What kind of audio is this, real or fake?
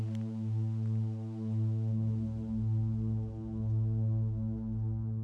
real